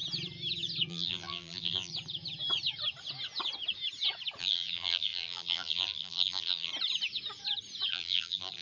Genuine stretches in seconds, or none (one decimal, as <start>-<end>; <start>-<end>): 0.0-0.9; 1.9-4.4; 6.7-7.9